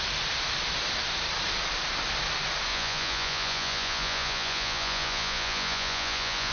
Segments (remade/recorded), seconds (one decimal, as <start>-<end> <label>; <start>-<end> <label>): 0.0-2.7 recorded; 2.7-6.5 remade